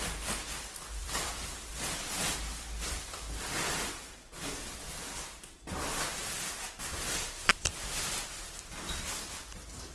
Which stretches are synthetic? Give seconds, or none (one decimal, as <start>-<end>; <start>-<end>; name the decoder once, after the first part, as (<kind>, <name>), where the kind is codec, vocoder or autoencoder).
1.0-1.7 (vocoder, BigVGAN v2)